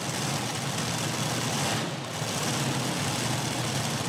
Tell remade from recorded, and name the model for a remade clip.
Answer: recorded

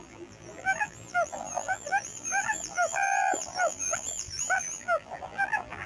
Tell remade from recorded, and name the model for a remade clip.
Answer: remade, vocoder, BigVGAN v2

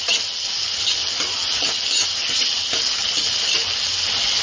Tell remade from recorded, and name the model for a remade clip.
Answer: recorded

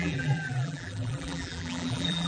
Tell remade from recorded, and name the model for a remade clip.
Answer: remade, vocoder, BigVGAN v2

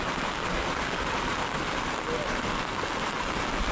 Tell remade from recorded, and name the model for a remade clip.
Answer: recorded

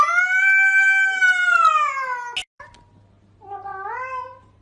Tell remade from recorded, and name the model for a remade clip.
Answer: recorded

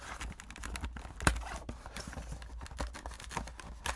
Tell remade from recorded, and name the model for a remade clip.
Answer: recorded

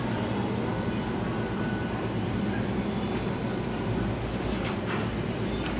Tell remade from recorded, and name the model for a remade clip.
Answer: recorded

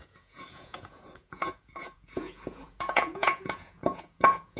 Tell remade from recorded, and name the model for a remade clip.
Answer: remade, vocoder, Vocos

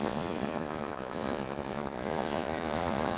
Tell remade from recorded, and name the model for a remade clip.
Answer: remade, vocoder, Vocos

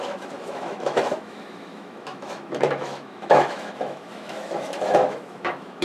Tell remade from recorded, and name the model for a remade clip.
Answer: remade, autoencoder, DAC-VAE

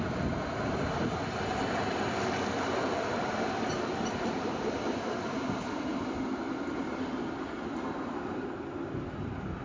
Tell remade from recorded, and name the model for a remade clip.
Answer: recorded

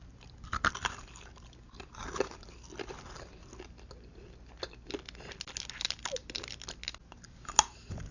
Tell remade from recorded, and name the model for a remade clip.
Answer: recorded